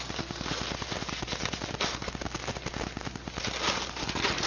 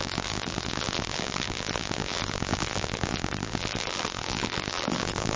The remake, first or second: second